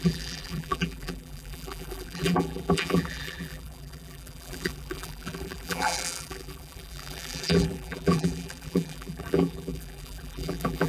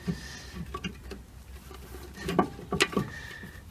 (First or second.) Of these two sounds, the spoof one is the first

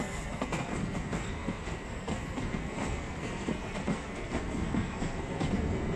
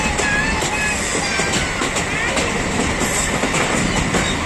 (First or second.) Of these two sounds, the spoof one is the first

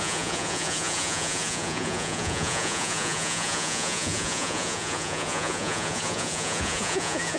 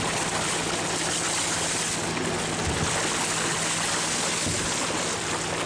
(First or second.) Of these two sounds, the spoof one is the first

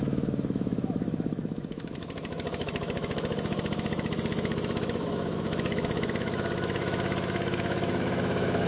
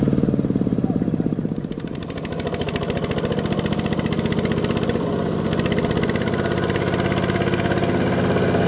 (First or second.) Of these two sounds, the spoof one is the first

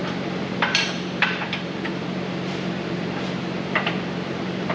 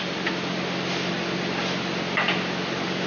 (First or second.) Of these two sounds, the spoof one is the first